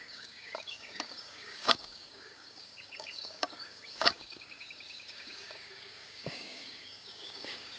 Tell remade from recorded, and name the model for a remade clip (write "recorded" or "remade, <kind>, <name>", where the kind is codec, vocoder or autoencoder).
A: remade, codec, DAC